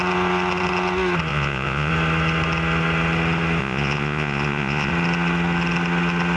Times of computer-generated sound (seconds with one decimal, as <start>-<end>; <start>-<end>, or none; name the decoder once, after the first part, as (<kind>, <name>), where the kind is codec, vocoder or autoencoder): 1.3-1.9 (vocoder, Vocos); 3.6-4.9